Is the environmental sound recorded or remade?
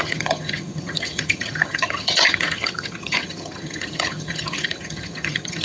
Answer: remade